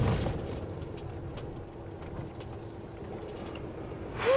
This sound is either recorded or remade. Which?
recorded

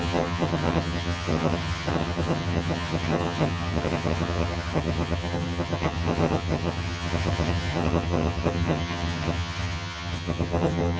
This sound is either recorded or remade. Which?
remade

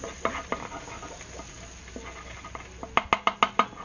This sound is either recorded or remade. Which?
recorded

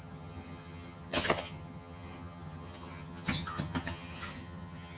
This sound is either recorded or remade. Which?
remade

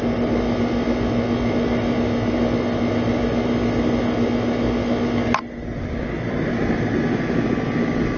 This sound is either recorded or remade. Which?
recorded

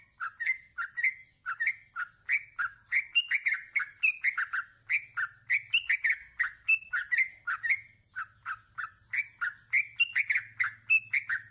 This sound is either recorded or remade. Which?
recorded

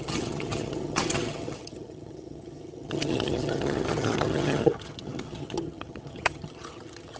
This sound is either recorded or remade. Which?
remade